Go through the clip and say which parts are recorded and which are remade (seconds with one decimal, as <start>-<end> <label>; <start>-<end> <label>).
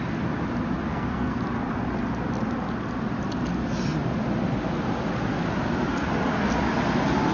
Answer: 0.0-0.9 recorded; 0.9-1.4 remade; 1.4-7.3 recorded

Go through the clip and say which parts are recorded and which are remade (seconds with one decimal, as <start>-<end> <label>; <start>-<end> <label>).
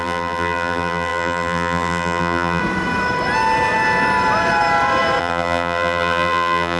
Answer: 0.0-2.6 remade; 2.6-5.2 recorded; 5.2-6.8 remade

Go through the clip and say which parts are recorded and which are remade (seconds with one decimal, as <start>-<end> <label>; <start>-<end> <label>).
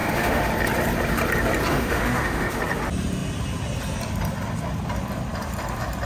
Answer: 0.0-0.5 remade; 0.5-1.7 recorded; 1.7-2.6 remade; 2.6-6.0 recorded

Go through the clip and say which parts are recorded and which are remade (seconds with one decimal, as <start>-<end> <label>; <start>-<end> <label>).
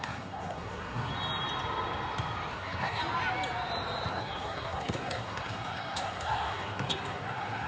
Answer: 0.0-1.1 remade; 1.1-2.5 recorded; 2.5-3.0 remade; 3.0-4.1 recorded; 4.1-7.7 remade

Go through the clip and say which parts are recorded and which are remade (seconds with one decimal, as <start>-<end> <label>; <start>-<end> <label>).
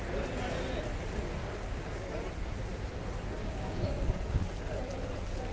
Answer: 0.0-1.4 recorded; 1.4-2.1 remade; 2.1-3.4 recorded; 3.4-4.5 remade; 4.5-5.5 recorded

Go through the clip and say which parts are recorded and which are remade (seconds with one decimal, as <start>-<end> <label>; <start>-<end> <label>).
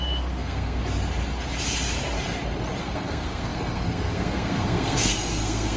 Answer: 0.0-0.8 remade; 0.8-2.8 recorded; 2.8-5.8 remade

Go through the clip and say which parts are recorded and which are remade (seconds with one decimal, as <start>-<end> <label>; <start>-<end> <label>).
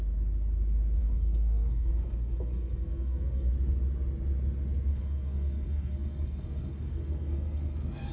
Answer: 0.0-1.0 recorded; 1.0-3.5 remade; 3.5-4.9 recorded; 4.9-8.1 remade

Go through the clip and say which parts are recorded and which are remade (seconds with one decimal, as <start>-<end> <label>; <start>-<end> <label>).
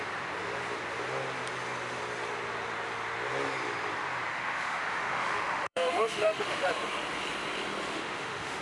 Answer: 0.0-4.3 recorded; 4.3-6.7 remade; 6.7-7.9 recorded; 7.9-8.6 remade